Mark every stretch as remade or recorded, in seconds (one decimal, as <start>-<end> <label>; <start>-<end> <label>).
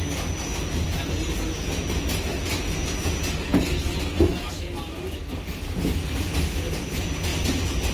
0.0-7.9 recorded